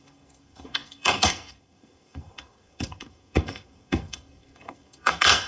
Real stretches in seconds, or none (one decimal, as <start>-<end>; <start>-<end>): none